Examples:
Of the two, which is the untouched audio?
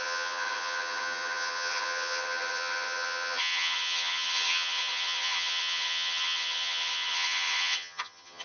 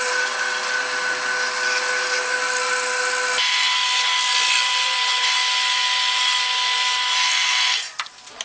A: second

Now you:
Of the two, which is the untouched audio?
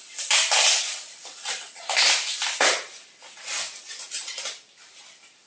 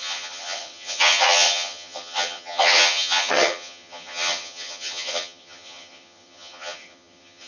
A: first